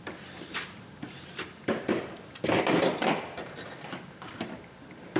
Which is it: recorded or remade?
remade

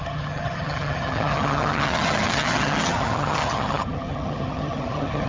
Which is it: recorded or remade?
remade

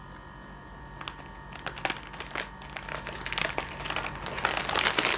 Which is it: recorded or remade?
recorded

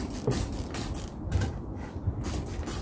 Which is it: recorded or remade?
remade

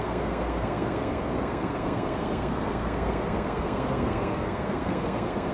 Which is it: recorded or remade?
remade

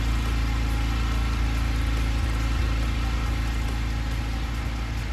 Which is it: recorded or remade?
recorded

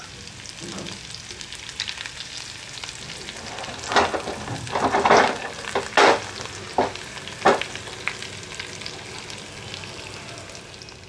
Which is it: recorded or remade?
recorded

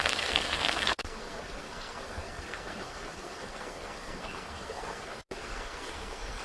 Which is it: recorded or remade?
remade